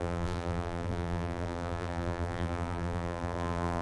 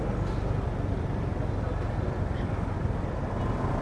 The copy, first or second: first